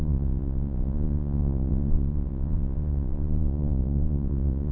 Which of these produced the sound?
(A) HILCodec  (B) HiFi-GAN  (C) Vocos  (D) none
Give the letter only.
C